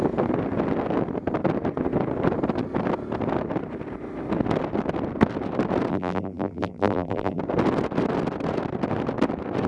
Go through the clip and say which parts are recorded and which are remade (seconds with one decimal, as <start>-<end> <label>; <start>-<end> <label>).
0.0-5.9 recorded; 5.9-7.4 remade; 7.4-9.7 recorded